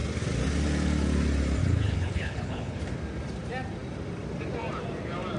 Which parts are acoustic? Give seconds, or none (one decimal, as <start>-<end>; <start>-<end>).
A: 0.0-1.6; 2.8-5.4